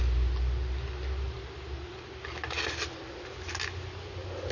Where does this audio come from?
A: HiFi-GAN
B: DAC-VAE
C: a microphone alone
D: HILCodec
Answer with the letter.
C